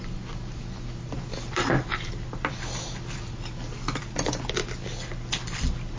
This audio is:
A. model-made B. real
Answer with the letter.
B